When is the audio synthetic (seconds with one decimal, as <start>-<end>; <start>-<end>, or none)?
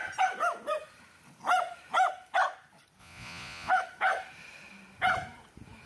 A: 3.0-3.7